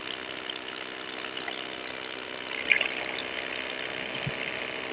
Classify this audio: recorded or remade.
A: recorded